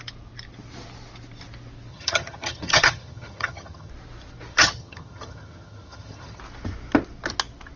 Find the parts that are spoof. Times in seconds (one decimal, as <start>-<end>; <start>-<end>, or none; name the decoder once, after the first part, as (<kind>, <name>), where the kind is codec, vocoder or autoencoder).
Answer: 1.9-3.9 (vocoder, HiFi-GAN); 4.5-6.4